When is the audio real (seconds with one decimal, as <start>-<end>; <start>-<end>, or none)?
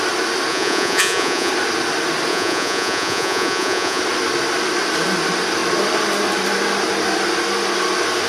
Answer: 0.0-0.5; 1.5-2.3; 4.0-8.3